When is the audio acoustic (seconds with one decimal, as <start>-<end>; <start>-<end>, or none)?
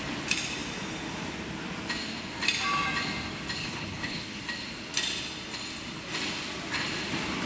0.0-3.6; 4.4-7.5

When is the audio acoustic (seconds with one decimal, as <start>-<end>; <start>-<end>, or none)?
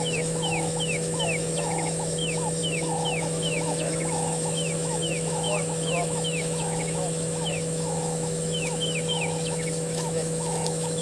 none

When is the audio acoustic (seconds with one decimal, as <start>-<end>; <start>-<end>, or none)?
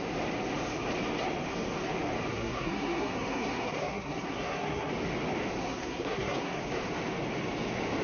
0.0-2.3; 4.9-5.6; 6.6-8.0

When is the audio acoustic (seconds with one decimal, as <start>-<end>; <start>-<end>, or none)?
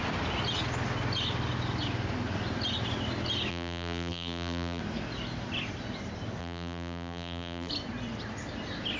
0.0-3.5; 4.8-6.4; 7.7-9.0